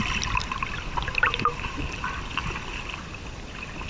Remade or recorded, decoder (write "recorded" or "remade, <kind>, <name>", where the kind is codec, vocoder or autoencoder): recorded